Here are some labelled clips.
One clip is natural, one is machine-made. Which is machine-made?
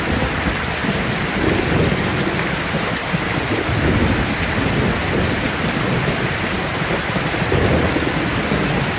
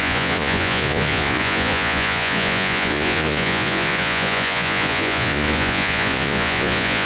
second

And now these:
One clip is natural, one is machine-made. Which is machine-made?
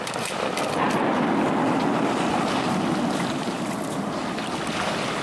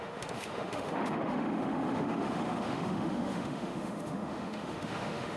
second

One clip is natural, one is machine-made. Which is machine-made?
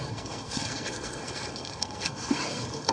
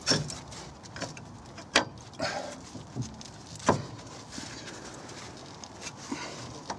first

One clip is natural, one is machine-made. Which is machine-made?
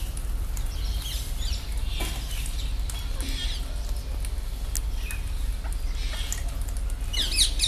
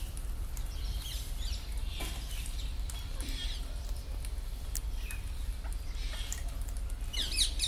second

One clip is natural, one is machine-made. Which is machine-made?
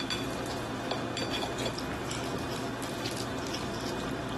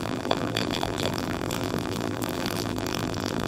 second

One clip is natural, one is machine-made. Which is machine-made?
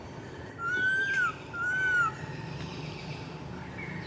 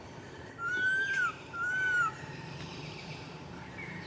second